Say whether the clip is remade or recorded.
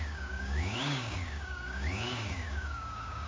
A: remade